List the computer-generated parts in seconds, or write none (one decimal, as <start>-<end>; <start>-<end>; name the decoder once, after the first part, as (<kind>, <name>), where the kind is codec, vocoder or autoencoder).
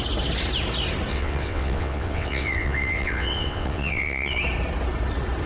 1.1-4.4 (vocoder, WaveNeXt)